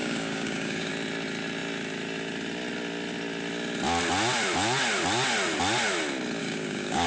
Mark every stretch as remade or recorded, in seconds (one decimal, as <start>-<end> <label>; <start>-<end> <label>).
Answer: 0.0-0.9 remade; 0.9-6.4 recorded; 6.4-7.1 remade